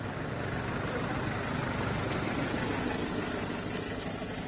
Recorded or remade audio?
recorded